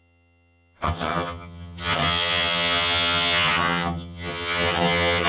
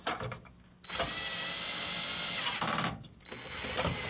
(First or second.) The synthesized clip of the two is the first